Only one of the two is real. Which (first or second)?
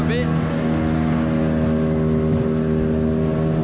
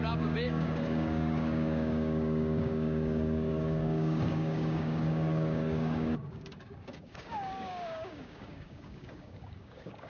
first